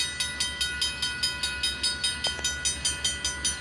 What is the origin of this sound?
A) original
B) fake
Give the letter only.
A